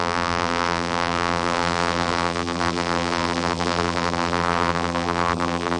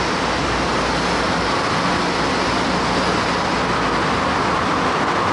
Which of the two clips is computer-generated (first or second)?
first